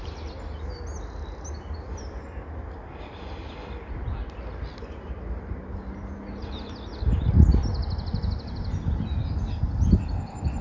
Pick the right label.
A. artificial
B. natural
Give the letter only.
B